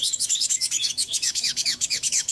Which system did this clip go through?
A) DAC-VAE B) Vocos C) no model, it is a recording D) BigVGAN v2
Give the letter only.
A